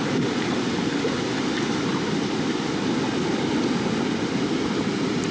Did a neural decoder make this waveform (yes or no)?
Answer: no